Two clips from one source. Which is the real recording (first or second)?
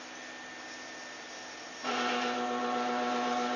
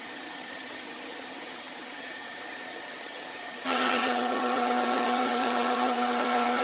first